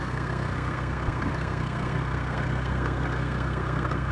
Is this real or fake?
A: fake